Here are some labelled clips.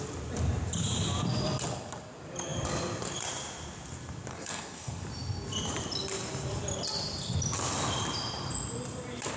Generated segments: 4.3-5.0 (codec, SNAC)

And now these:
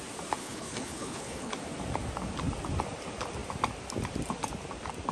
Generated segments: 0.4-1.5 (codec, HILCodec)

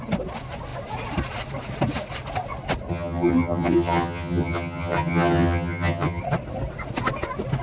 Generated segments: 2.9-6.2 (vocoder, HiFi-GAN)

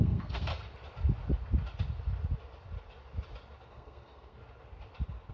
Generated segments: 0.0-0.5 (codec, SNAC); 3.7-4.4

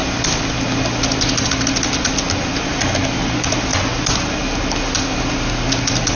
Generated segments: none

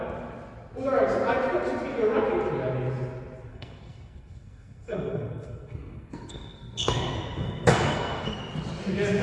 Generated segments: 3.5-8.4 (codec, SNAC)

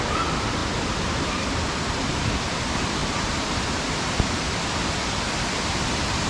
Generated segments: none